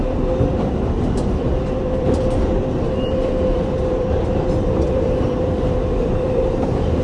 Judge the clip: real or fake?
fake